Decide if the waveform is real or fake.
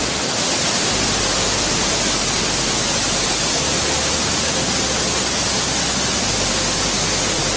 real